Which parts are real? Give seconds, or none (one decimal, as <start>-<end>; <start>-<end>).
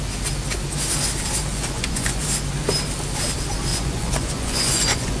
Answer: 0.0-1.5; 2.2-3.7